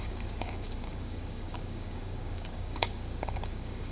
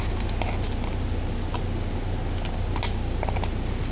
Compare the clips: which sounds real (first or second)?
second